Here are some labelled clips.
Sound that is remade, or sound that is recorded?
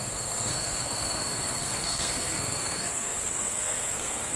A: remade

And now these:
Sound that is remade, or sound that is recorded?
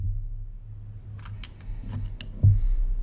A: recorded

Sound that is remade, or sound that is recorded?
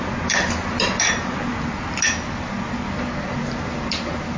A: recorded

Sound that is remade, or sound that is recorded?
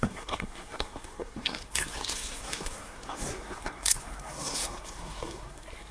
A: remade